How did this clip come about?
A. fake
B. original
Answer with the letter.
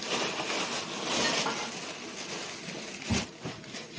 B